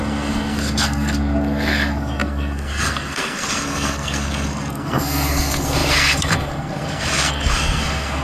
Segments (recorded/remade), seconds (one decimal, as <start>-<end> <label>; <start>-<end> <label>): 0.0-8.2 remade